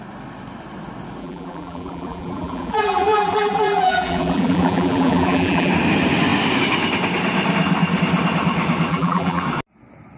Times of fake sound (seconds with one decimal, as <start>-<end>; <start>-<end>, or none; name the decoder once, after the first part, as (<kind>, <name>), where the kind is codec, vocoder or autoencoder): 1.2-5.7 (vocoder, BigVGAN v2); 8.9-9.4

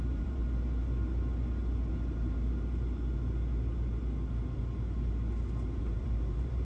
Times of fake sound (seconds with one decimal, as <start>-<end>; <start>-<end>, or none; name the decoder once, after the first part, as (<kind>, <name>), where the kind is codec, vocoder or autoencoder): 0.0-0.4 (vocoder, BigVGAN v2); 1.9-2.4; 5.8-6.6

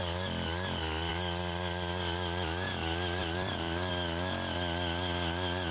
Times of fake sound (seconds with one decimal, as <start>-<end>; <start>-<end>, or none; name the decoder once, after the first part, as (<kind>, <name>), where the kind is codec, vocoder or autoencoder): 3.2-3.9 (vocoder, BigVGAN v2)

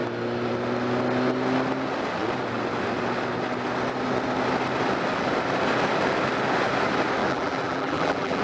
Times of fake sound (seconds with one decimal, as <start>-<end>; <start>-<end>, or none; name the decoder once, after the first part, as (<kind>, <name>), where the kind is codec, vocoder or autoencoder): 7.2-8.4 (vocoder, BigVGAN v2)